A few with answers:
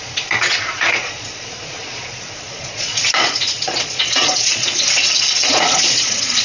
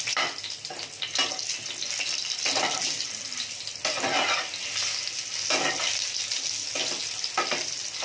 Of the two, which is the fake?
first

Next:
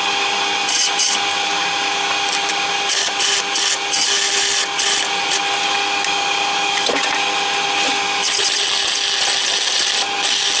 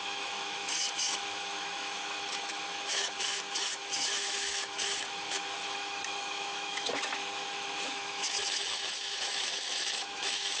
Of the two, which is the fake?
second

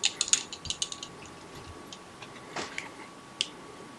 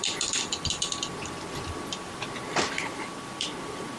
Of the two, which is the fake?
second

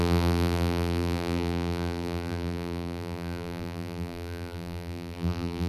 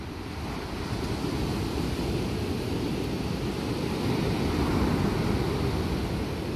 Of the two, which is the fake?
first